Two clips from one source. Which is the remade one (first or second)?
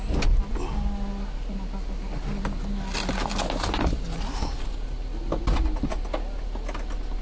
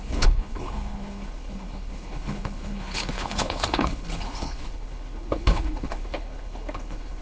second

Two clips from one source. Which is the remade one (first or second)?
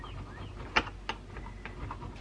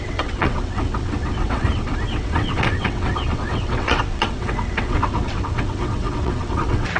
second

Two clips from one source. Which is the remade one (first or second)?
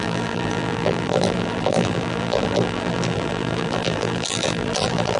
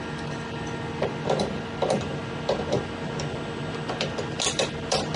first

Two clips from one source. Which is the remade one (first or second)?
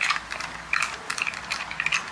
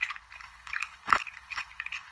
second